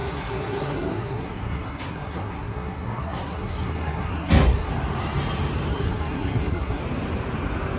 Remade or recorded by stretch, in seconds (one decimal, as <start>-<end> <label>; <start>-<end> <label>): 0.0-4.7 remade; 4.7-5.7 recorded; 5.7-6.8 remade; 6.8-7.8 recorded